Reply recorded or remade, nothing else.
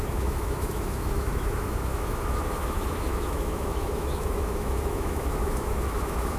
remade